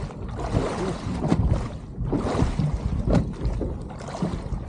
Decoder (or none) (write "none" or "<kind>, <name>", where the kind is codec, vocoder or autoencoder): none